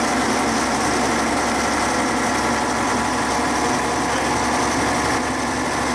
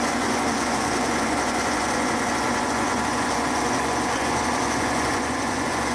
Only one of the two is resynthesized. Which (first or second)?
second